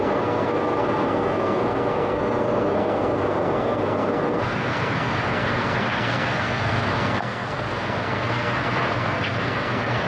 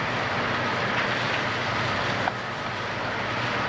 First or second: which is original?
second